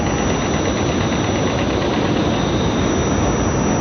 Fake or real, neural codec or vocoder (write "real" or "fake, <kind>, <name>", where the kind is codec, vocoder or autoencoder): real